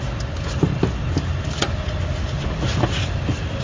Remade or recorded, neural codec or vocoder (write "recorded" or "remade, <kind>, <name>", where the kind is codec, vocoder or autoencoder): recorded